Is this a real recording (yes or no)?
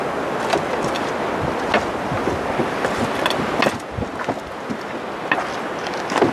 yes